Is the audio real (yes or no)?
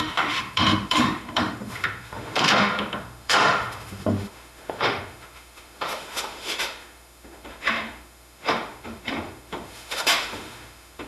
no